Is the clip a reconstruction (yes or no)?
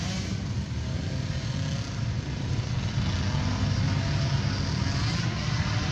no